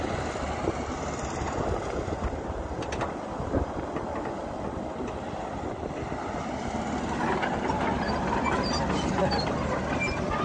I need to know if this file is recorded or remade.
recorded